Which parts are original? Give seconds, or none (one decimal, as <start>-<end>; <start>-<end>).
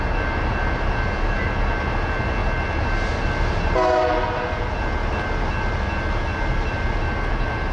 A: 0.0-7.7